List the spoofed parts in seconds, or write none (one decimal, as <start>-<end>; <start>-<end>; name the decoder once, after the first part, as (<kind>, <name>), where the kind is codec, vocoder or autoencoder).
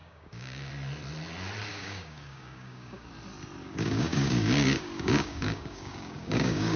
0.0-0.7 (codec, DAC); 1.7-3.1; 3.6-6.8